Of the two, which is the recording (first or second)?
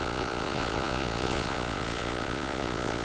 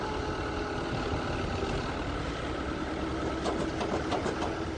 second